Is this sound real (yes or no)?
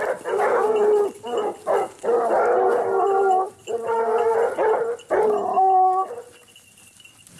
yes